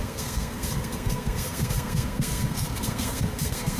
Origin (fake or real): fake